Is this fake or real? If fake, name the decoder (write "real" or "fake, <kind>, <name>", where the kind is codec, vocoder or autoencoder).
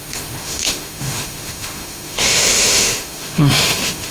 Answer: fake, autoencoder, DAC-VAE